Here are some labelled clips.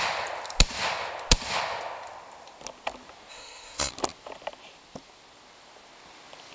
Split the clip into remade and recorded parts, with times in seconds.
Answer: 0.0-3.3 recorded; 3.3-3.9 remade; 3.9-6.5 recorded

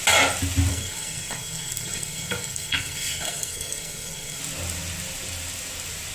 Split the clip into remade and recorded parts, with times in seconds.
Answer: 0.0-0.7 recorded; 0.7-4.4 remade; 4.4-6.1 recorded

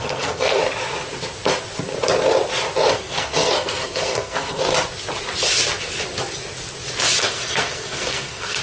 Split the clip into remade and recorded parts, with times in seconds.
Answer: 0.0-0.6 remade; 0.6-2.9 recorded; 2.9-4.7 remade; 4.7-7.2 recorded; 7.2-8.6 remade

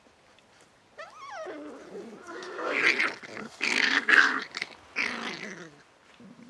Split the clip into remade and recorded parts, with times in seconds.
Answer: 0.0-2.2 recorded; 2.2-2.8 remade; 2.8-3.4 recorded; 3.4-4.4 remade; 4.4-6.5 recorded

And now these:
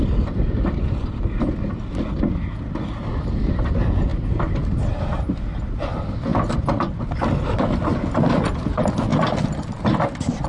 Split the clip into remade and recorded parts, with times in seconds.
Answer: 0.0-10.5 recorded

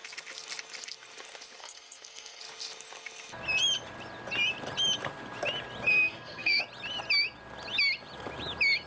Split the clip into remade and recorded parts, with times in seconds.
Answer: 0.0-1.6 recorded; 1.6-2.4 remade; 2.4-5.9 recorded; 5.9-6.6 remade; 6.6-8.9 recorded